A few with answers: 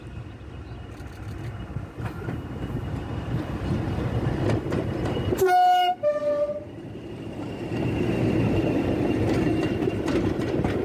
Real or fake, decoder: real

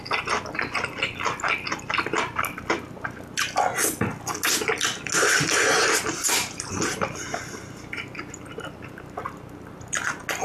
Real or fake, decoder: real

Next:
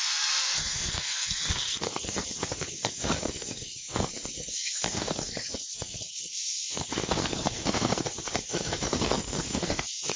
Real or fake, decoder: fake, codec, SNAC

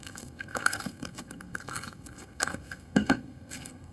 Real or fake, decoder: fake, codec, SNAC